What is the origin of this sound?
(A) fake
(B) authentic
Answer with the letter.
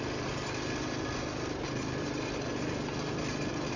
B